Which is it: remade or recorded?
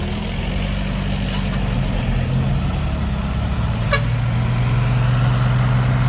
recorded